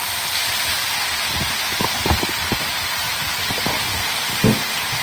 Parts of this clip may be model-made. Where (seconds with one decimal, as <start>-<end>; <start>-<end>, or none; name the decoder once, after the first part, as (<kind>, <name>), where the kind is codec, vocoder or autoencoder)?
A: none